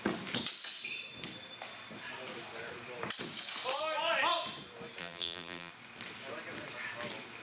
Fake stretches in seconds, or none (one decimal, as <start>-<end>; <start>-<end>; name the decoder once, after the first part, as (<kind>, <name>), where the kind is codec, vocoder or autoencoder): 5.0-5.7 (vocoder, BigVGAN v2)